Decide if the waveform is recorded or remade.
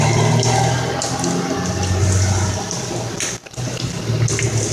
recorded